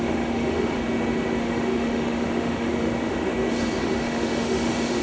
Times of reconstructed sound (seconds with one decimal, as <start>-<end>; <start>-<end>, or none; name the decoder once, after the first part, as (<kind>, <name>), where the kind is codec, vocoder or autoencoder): 0.0-0.8 (autoencoder, DAC-VAE); 1.4-3.3; 3.8-5.0